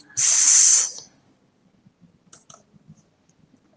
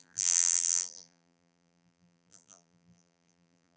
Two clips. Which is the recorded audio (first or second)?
first